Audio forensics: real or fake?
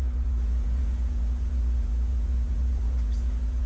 fake